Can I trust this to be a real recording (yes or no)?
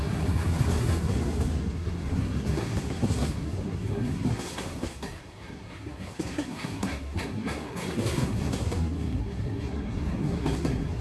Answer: no